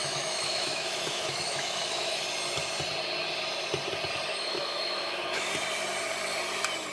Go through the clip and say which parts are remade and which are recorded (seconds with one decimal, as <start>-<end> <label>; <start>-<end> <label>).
0.0-2.2 remade; 2.2-4.3 recorded; 4.3-5.5 remade; 5.5-6.9 recorded